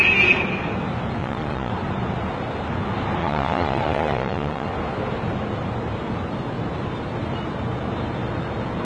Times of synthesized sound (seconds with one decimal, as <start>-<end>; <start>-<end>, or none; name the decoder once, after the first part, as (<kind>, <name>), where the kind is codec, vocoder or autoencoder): 1.2-1.7 (vocoder, Vocos); 3.2-4.7